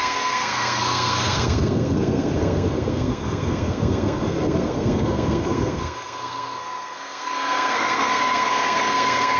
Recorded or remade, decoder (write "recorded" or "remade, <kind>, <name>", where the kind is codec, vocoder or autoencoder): remade, codec, SNAC